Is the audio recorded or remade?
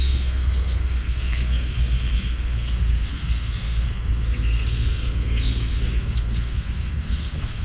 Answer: remade